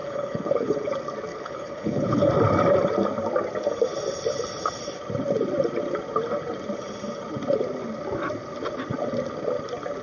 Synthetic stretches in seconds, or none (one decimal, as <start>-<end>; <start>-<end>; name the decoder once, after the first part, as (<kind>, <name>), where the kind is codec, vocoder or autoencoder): 0.0-0.9 (codec, HILCodec); 1.3-2.3